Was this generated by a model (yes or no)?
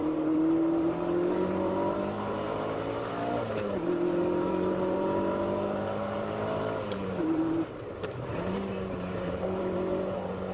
yes